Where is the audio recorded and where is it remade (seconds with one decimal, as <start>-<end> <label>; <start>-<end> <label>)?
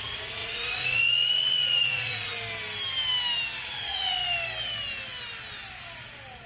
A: 0.0-2.3 remade; 2.3-3.6 recorded; 3.6-4.2 remade; 4.2-6.5 recorded